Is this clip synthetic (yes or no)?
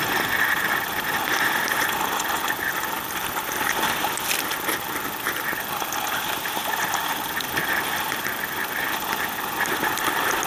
no